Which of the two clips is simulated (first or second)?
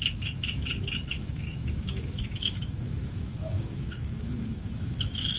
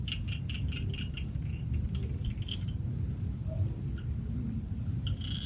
first